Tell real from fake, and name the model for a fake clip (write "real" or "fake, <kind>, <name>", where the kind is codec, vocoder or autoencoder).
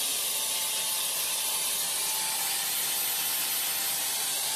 real